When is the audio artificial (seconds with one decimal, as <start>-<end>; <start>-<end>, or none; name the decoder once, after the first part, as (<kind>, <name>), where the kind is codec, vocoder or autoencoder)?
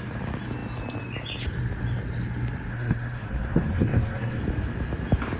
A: 2.7-4.4 (codec, SNAC)